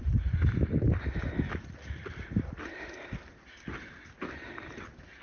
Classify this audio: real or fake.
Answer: real